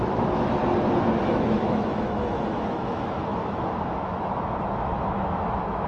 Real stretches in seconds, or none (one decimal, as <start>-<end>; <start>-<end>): 0.6-1.3